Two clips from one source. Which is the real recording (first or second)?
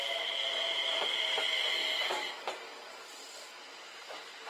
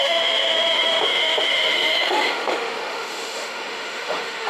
first